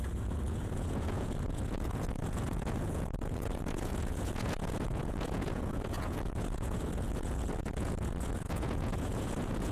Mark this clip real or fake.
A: fake